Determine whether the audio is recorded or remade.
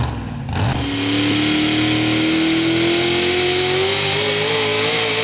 recorded